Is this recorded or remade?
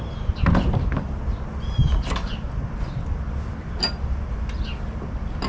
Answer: recorded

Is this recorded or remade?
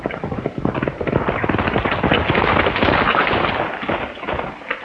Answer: recorded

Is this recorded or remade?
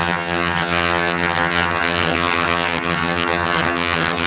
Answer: remade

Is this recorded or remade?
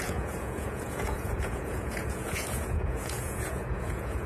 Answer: remade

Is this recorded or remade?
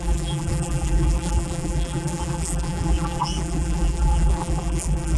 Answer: remade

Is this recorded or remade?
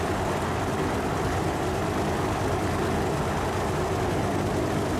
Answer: remade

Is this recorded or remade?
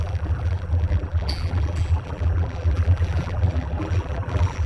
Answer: remade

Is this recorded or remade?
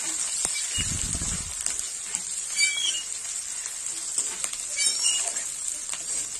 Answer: recorded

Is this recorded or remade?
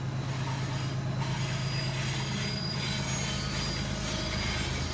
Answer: recorded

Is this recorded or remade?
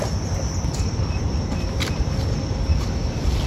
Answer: recorded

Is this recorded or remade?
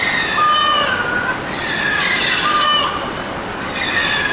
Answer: recorded